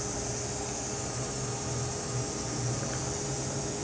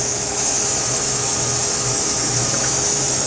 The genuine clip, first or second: first